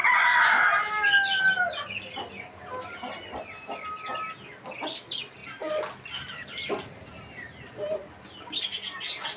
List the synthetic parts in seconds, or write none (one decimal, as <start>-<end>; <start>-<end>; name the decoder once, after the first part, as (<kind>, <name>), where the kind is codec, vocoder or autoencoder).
none